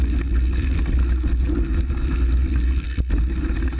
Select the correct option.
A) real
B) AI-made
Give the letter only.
A